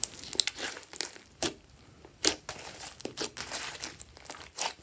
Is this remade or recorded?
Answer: recorded